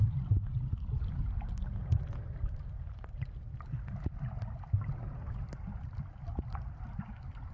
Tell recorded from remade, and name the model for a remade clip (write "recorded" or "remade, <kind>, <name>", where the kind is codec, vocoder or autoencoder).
recorded